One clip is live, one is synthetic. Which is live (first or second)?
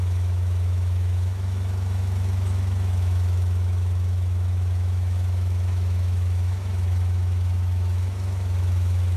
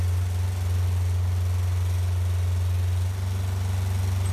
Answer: second